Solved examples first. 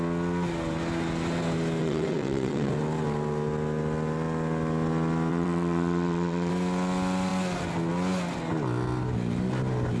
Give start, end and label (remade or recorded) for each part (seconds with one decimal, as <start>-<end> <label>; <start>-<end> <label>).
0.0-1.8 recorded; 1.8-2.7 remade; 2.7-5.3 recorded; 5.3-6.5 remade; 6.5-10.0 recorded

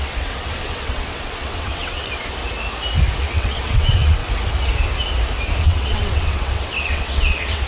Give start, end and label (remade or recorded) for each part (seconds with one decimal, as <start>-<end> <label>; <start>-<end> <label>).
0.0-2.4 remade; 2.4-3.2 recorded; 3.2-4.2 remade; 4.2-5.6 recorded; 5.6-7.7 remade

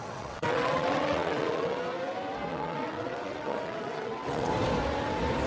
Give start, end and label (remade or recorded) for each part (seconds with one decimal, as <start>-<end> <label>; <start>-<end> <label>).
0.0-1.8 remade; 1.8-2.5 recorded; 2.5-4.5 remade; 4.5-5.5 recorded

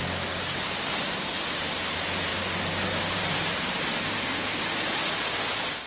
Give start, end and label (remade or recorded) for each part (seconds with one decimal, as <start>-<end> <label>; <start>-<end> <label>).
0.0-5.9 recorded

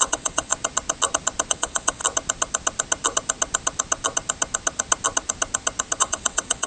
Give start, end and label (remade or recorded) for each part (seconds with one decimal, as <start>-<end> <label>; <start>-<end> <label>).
0.0-0.5 remade; 0.5-1.5 recorded; 1.5-2.0 remade; 2.0-6.0 recorded; 6.0-6.7 remade